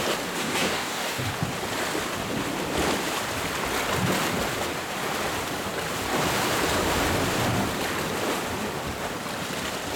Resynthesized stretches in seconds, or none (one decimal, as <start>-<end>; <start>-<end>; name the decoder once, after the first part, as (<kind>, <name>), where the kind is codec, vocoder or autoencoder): 0.4-1.3 (codec, DAC)